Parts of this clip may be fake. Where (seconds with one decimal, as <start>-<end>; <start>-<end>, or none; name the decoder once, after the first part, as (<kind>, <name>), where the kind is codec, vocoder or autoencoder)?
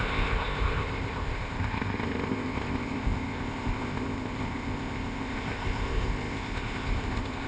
0.0-7.5 (codec, ZipCodec)